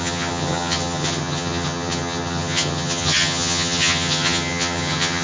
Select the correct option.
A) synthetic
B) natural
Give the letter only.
A